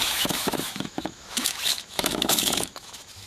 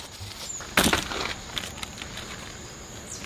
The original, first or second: second